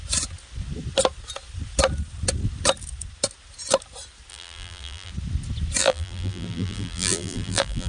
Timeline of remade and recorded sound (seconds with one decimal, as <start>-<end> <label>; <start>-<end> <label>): 0.0-4.3 recorded; 4.3-5.1 remade; 5.1-5.8 recorded; 5.8-7.9 remade